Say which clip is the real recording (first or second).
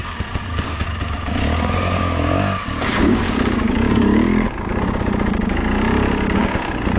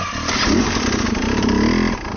second